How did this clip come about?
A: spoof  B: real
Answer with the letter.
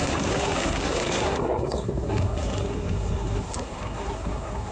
A